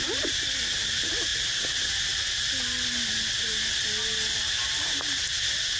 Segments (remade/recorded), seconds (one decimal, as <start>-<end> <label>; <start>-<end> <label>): 0.0-5.8 recorded